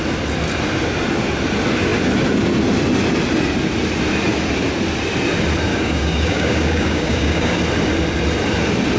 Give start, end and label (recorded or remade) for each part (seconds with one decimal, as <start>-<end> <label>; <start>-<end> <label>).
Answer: 0.0-5.7 recorded; 5.7-7.6 remade; 7.6-9.0 recorded